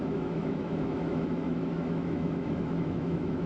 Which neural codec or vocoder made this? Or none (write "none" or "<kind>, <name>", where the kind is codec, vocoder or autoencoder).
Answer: autoencoder, DAC-VAE